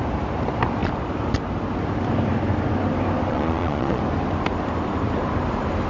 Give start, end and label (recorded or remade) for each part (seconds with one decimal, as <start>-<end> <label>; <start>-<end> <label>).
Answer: 0.0-3.3 recorded; 3.3-4.0 remade; 4.0-5.9 recorded